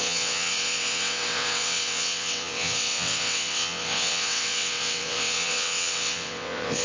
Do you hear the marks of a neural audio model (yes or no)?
yes